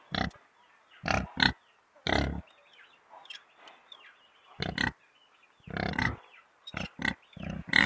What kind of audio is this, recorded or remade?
recorded